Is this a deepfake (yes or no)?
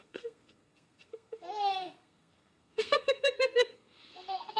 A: yes